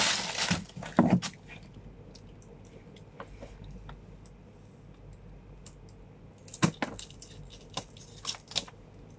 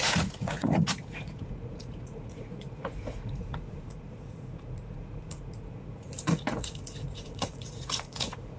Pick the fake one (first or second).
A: second